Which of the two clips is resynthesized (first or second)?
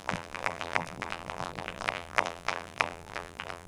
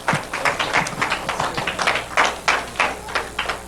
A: first